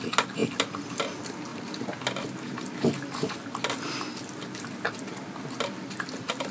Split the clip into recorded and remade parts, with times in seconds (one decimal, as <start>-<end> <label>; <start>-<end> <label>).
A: 0.0-6.5 recorded